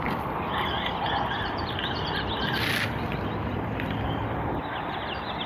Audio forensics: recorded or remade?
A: remade